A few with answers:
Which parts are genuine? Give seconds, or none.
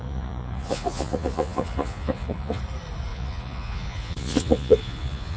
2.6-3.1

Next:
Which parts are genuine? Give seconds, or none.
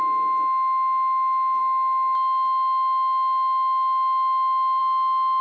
0.0-5.4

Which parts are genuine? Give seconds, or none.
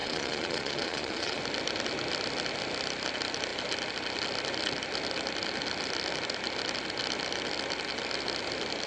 1.4-8.9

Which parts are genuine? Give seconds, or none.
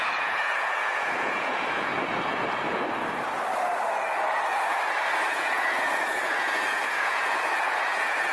1.9-5.3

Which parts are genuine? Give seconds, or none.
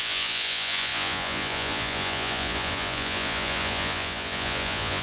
none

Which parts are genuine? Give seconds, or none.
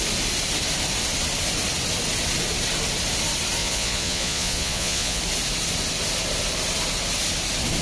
0.0-3.6; 5.2-7.8